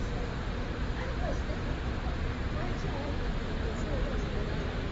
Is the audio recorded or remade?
recorded